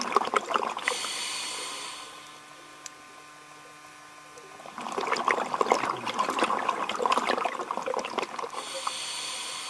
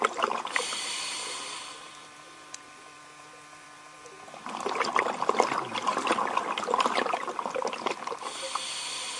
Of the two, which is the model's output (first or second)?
second